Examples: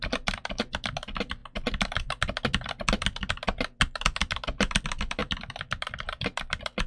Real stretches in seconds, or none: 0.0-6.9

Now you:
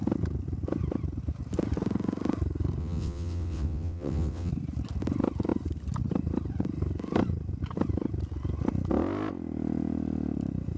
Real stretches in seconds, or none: 0.0-2.8; 4.5-10.8

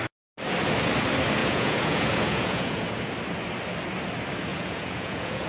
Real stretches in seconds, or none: 0.0-1.4; 3.1-4.5

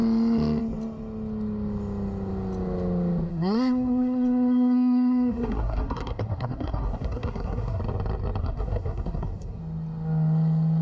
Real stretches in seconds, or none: 0.0-3.3; 7.8-8.4; 9.6-10.8

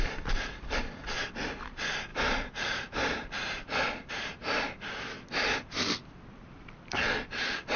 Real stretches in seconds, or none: 0.0-2.1; 4.1-7.8

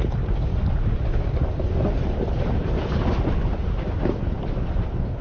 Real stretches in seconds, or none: 0.0-0.5; 1.7-5.2